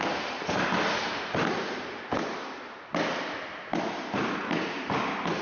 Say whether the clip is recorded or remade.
recorded